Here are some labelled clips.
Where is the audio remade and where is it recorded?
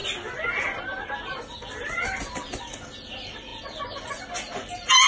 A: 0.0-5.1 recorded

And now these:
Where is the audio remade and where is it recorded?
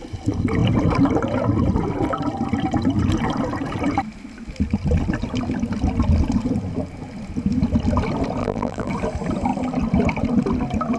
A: 0.0-8.4 recorded; 8.4-8.9 remade; 8.9-11.0 recorded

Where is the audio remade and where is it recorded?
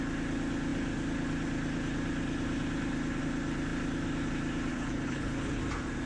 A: 0.0-4.7 recorded; 4.7-5.6 remade; 5.6-6.1 recorded